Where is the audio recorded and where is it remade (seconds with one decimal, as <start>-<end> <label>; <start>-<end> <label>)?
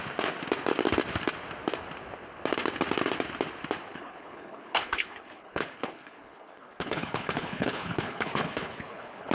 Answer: 0.0-3.9 recorded; 3.9-9.3 remade